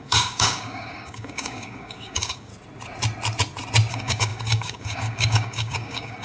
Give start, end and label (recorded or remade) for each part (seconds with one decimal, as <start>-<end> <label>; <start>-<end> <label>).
0.0-2.5 remade; 2.5-3.9 recorded; 3.9-6.2 remade